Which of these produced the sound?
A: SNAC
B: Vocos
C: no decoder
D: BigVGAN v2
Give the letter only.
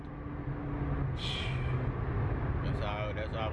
C